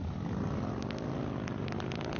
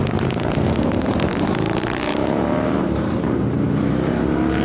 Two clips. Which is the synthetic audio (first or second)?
second